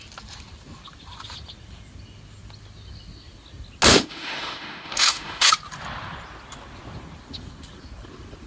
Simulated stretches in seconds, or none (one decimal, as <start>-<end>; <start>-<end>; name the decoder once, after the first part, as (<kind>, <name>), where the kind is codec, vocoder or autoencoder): 3.9-5.5 (autoencoder, DAC-VAE)

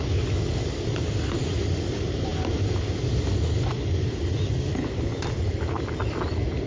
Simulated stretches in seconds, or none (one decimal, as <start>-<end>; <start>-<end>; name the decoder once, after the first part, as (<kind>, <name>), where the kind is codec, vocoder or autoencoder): none

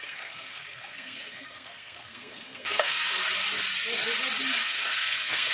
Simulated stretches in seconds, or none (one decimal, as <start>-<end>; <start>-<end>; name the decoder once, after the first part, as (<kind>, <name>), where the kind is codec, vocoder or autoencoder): 0.0-3.2 (codec, SNAC); 4.6-5.5